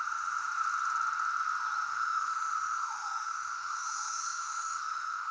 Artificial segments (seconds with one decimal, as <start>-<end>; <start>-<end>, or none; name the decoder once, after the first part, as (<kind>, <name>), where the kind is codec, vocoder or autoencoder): 1.9-5.3 (autoencoder, DAC-VAE)